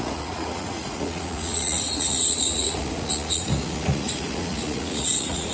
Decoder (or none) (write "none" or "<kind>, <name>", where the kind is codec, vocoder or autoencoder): vocoder, Vocos